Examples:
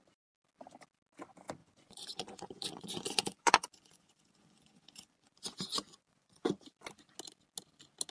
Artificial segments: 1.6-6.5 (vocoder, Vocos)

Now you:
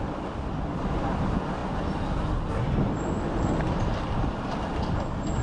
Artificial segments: 0.0-1.6 (vocoder, BigVGAN v2); 4.7-5.4